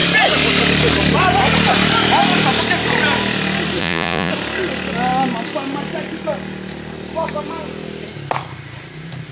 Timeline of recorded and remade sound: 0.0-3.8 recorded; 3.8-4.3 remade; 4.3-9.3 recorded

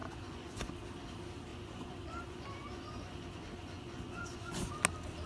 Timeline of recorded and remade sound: 0.0-0.7 remade; 0.7-1.5 recorded; 1.5-4.7 remade; 4.7-5.3 recorded

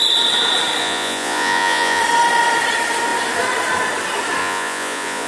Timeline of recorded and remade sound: 0.0-0.8 recorded; 0.8-2.0 remade; 2.0-4.4 recorded; 4.4-5.3 remade

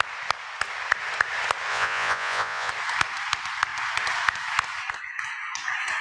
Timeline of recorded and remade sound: 0.0-1.7 recorded; 1.7-2.7 remade; 2.7-6.0 recorded

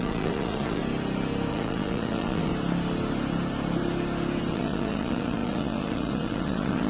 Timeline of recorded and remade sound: 0.0-0.8 remade; 0.8-1.5 recorded; 1.5-2.5 remade; 2.5-4.5 recorded; 4.5-6.9 remade

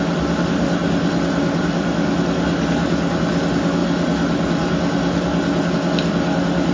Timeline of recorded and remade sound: 0.0-6.7 recorded